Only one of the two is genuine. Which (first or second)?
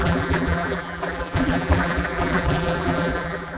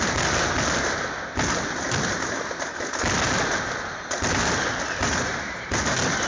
second